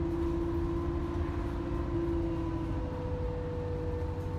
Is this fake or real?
real